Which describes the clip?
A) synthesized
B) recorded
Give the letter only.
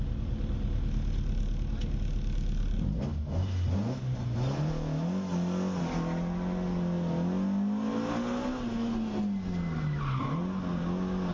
B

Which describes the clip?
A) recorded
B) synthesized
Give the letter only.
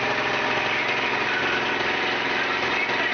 A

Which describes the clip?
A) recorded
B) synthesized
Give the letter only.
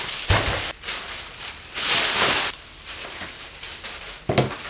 A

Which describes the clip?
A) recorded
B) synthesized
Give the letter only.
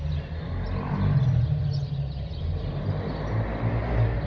A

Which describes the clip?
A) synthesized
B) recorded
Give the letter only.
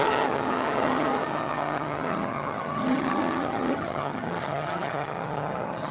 A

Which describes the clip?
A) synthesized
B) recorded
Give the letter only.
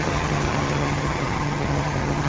A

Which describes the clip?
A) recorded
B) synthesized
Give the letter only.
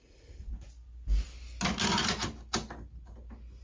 A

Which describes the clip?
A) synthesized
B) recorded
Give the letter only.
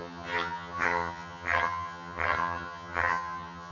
A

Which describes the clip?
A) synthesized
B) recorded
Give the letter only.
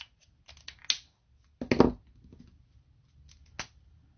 B